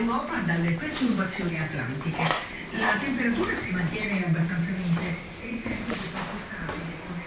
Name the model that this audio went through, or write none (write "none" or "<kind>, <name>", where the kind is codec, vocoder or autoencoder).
none